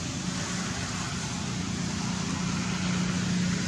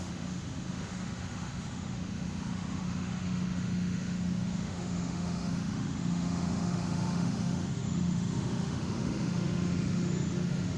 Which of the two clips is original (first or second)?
first